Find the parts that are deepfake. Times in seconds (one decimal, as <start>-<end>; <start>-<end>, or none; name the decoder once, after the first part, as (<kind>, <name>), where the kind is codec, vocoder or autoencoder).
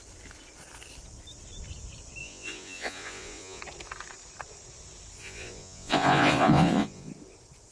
2.2-3.6 (vocoder, Vocos); 5.2-7.1